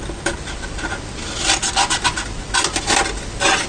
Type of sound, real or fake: real